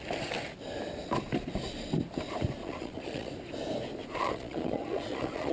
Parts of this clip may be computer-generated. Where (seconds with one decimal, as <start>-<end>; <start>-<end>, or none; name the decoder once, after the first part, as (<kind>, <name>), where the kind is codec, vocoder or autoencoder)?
2.6-3.3 (vocoder, Vocos); 4.0-5.5